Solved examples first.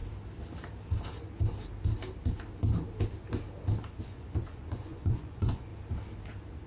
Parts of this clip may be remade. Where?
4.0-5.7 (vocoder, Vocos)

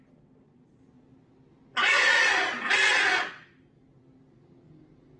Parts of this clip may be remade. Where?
none

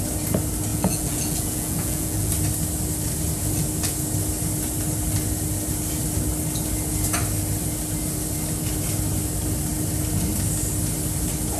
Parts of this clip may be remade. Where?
0.7-2.3 (vocoder, Vocos)